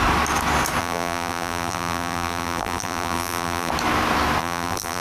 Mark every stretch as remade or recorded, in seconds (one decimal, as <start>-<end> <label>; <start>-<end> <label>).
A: 0.0-0.8 recorded; 0.8-3.7 remade; 3.7-4.4 recorded; 4.4-5.0 remade